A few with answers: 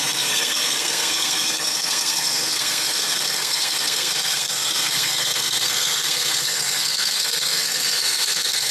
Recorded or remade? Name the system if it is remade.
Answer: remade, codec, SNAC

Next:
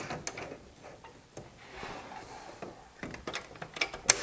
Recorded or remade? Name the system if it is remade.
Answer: recorded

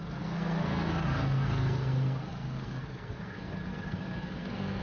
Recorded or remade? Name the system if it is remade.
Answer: remade, codec, SNAC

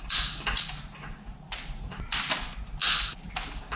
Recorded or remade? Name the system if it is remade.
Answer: recorded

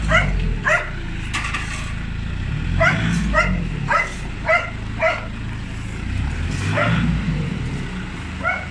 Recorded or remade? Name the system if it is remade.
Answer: recorded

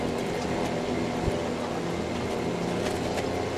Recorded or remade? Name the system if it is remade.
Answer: recorded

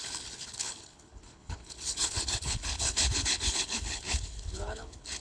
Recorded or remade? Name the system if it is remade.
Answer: remade, codec, HILCodec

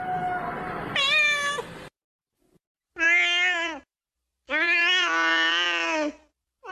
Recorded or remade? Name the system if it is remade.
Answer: recorded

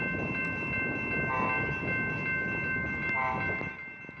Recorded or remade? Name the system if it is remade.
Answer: recorded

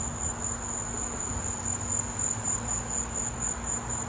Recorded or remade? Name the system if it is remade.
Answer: recorded